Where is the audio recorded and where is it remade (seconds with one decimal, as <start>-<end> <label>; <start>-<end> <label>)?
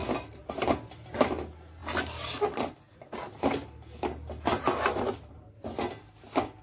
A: 0.0-6.6 recorded